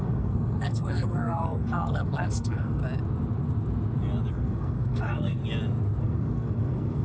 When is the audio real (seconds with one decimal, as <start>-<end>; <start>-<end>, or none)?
2.8-4.3; 5.4-6.0